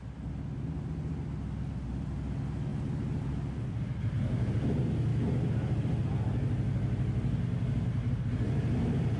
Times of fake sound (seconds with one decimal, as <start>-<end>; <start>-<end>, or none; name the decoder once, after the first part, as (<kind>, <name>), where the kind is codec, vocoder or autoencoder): none